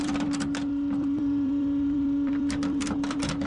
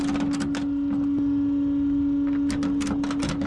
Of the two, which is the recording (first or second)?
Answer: second